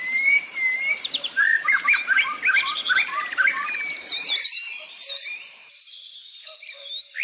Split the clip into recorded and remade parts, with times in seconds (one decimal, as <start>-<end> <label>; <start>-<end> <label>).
0.0-7.2 remade

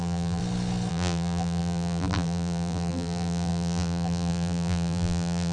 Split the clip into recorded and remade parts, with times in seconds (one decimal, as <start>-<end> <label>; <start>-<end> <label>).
0.0-0.4 remade; 0.4-0.9 recorded; 0.9-5.5 remade

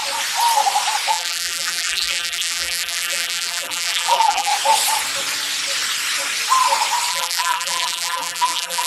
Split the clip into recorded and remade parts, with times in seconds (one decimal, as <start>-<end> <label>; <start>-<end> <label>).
0.0-1.1 recorded; 1.1-4.5 remade; 4.5-7.1 recorded; 7.1-8.9 remade